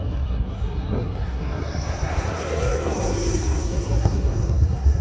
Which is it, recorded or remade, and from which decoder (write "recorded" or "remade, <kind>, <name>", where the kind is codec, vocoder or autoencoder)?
remade, codec, SNAC